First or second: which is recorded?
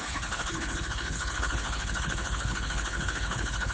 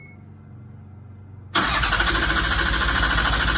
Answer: second